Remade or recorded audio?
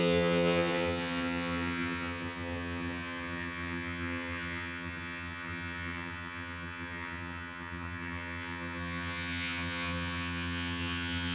remade